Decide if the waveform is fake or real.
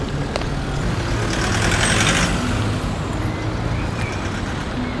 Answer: real